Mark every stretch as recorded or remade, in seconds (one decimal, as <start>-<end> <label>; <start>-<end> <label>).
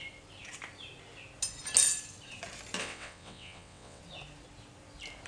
0.0-2.8 recorded; 2.8-4.0 remade; 4.0-5.3 recorded